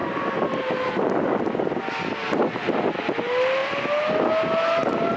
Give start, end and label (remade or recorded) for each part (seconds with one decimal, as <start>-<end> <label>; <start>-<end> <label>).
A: 0.0-5.2 recorded